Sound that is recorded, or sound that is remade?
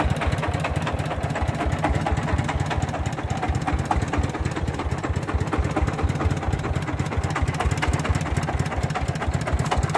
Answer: recorded